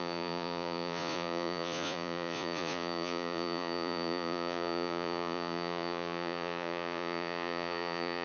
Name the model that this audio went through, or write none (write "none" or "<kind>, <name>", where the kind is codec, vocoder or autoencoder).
vocoder, Vocos